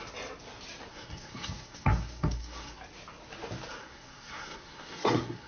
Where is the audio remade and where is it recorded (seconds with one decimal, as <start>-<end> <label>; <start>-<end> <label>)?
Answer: 0.0-0.9 recorded; 0.9-2.8 remade; 2.8-3.8 recorded; 3.8-5.5 remade